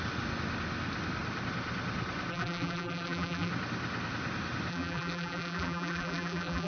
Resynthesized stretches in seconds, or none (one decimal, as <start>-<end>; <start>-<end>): 2.3-3.5; 4.7-6.7